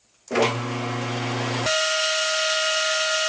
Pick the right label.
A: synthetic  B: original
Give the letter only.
B